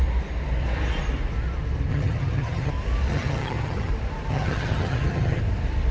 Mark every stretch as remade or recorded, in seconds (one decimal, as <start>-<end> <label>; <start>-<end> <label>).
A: 0.0-1.9 recorded; 1.9-2.7 remade; 2.7-3.1 recorded; 3.1-3.9 remade; 3.9-4.3 recorded; 4.3-5.4 remade; 5.4-5.9 recorded